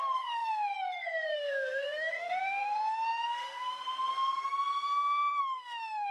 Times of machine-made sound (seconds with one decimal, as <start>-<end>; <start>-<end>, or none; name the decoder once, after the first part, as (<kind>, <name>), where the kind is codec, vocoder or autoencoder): 0.0-6.1 (codec, SNAC)